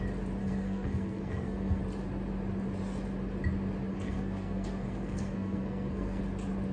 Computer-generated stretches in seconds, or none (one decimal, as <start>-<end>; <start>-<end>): 0.4-1.8; 3.9-6.2